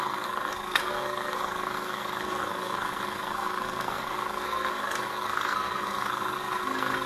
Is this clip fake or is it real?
fake